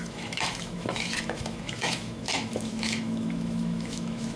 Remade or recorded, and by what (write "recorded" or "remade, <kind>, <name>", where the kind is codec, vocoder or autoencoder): remade, autoencoder, DAC-VAE